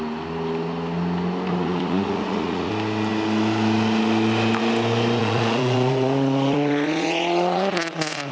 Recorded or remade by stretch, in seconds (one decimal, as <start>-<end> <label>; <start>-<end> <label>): 0.0-1.5 recorded; 1.5-2.7 remade; 2.7-5.2 recorded; 5.2-8.3 remade